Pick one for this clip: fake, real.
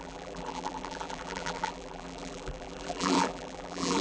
fake